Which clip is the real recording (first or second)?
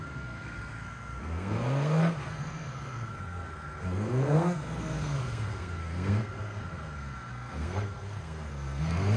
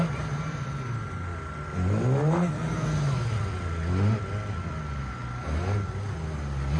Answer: second